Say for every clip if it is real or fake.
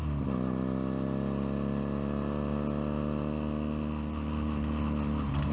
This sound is real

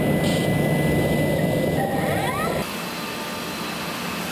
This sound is real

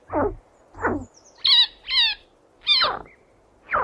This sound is real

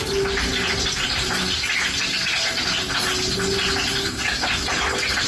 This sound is real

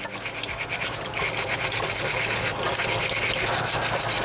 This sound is real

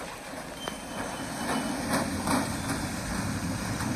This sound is real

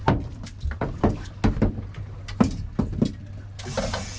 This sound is real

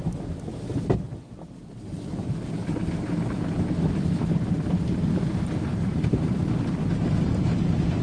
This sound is real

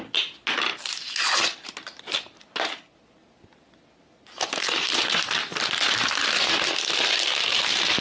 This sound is real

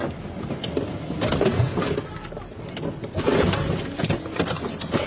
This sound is real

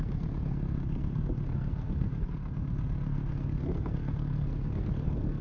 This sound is fake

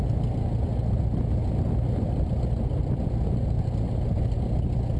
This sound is real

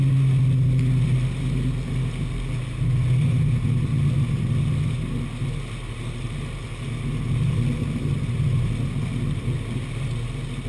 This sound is real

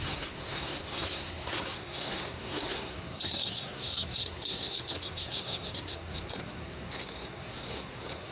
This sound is fake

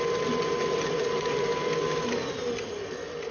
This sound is real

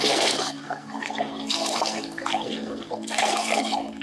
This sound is fake